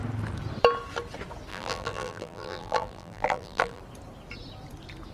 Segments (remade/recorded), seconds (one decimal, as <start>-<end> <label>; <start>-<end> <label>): 0.0-1.5 recorded; 1.5-3.8 remade; 3.8-5.1 recorded